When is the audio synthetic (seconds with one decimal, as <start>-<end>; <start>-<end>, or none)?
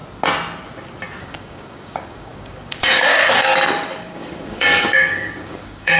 1.2-3.5; 4.0-6.0